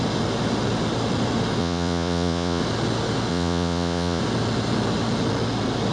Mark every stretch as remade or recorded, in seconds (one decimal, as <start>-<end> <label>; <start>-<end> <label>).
0.0-1.6 recorded; 1.6-2.6 remade; 2.6-3.3 recorded; 3.3-4.2 remade; 4.2-5.9 recorded